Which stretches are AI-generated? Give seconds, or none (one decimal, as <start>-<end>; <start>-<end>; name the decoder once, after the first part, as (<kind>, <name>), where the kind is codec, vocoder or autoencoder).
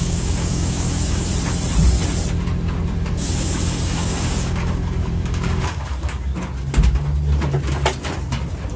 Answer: 0.0-1.3 (codec, DAC); 3.1-6.3